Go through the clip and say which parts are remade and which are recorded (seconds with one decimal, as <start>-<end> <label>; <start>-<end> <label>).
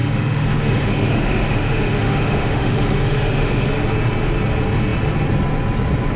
0.0-3.7 remade; 3.7-6.2 recorded